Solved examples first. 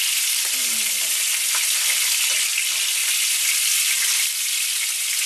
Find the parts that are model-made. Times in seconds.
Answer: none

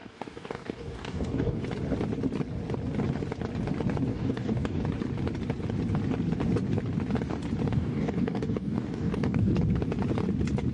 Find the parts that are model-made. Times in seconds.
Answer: 0.0-1.6 (codec, DAC); 4.1-4.8; 7.7-9.5